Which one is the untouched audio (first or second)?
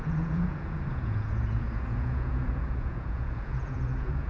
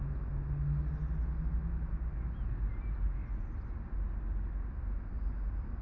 second